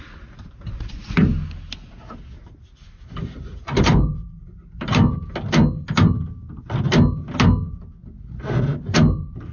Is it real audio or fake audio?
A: real